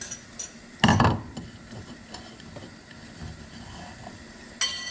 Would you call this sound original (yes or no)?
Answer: yes